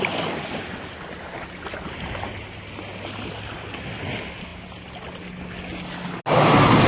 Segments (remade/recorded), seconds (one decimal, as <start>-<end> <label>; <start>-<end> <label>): 0.0-6.9 recorded